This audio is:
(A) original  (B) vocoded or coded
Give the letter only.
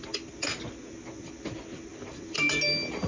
A